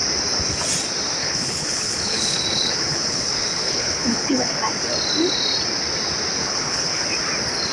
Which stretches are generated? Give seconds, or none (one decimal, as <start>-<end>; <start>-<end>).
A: 1.2-4.6; 6.4-7.0